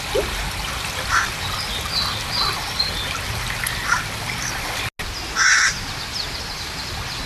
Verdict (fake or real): real